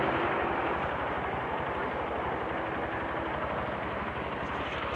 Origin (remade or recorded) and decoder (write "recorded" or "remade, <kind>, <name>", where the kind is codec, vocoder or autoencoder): recorded